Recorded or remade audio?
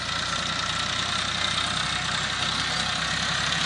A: recorded